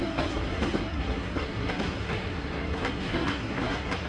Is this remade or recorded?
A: remade